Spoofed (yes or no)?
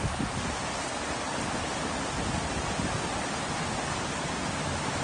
no